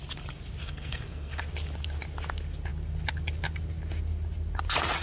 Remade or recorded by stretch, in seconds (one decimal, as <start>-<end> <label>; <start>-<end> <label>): 0.0-0.6 recorded; 0.6-1.4 remade; 1.4-5.0 recorded